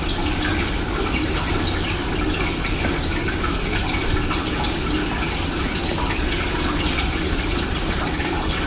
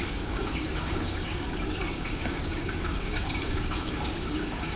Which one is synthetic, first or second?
second